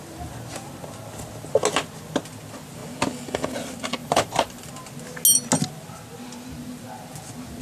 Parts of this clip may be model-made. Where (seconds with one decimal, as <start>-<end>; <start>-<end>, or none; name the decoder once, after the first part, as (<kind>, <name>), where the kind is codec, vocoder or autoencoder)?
4.0-4.7 (vocoder, BigVGAN v2)